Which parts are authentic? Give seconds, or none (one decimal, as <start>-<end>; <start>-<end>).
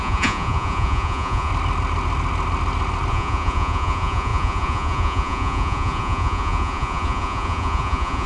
1.5-3.1